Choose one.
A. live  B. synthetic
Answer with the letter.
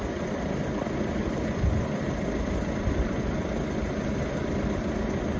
A